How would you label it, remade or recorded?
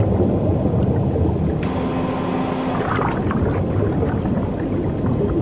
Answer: recorded